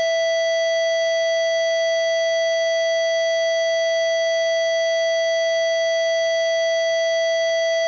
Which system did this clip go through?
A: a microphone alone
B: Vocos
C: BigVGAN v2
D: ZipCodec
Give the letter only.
A